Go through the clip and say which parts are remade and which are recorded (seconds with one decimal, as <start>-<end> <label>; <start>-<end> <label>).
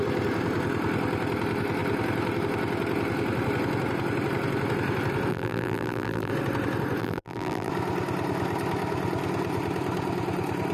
0.0-5.3 recorded; 5.3-6.3 remade; 6.3-7.0 recorded; 7.0-7.7 remade; 7.7-10.7 recorded